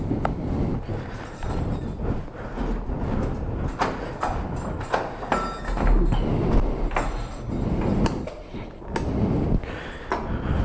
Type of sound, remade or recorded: recorded